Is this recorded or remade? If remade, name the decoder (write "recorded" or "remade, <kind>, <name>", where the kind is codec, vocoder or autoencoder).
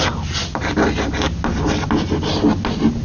recorded